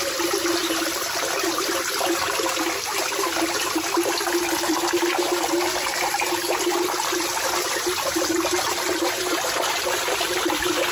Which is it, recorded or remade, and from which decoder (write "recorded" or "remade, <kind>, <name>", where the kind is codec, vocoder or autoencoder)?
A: recorded